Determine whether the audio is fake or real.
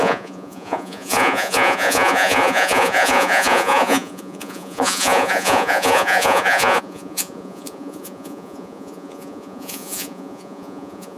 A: fake